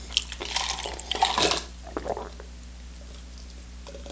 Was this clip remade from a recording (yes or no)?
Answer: no